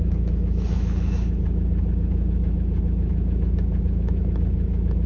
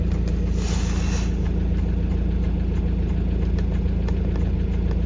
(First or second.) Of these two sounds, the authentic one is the second